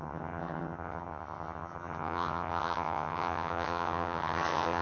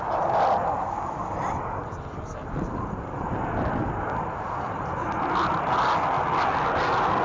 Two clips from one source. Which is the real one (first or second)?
second